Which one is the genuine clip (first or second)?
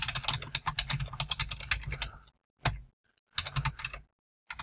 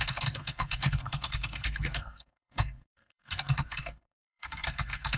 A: first